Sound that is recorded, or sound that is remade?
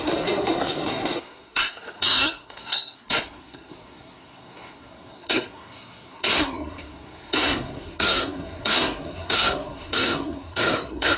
remade